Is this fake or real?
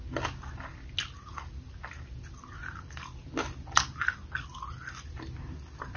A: real